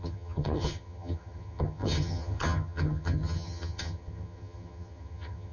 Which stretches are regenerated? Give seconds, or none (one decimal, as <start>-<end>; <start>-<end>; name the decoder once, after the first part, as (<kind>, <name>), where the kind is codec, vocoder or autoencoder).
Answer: 0.0-5.5 (vocoder, HiFi-GAN)